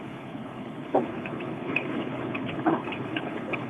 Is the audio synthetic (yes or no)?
yes